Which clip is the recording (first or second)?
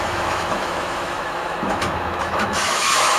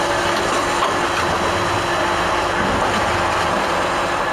second